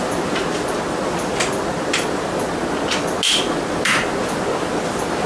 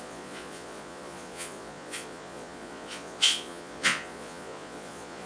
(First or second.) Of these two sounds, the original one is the first